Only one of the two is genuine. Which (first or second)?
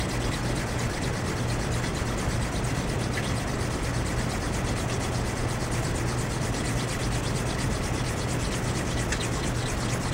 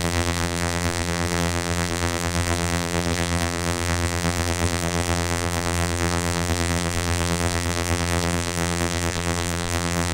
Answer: first